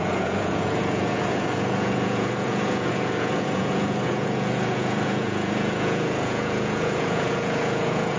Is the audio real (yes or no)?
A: no